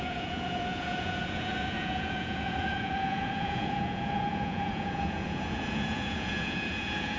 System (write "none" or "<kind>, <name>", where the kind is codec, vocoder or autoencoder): vocoder, Vocos